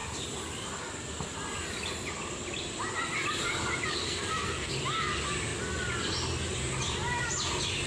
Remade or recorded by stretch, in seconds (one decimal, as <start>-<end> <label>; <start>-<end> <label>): 0.0-4.0 recorded; 4.0-4.7 remade; 4.7-7.9 recorded